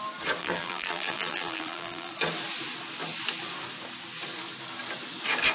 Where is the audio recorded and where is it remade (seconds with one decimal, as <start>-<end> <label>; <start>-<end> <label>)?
0.0-0.4 recorded; 0.4-2.1 remade; 2.1-5.5 recorded